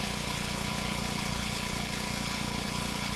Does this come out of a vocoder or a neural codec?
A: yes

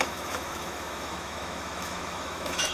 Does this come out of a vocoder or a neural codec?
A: yes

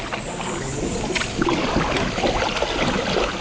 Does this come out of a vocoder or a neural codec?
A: no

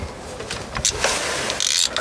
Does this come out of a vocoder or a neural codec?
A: no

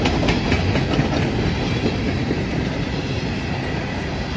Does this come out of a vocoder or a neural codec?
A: no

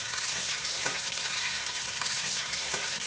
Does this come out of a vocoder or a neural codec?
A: yes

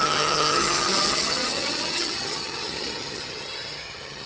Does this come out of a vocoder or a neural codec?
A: yes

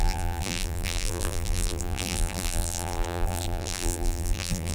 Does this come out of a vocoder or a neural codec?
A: yes